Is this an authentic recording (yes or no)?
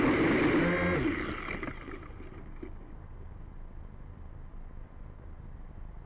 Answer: yes